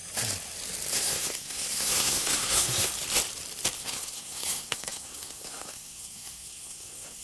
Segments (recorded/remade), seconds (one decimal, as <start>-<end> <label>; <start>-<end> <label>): 0.0-0.9 recorded; 0.9-2.9 remade; 2.9-3.8 recorded; 3.8-7.2 remade